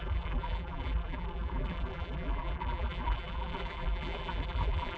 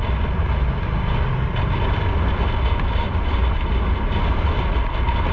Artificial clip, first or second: first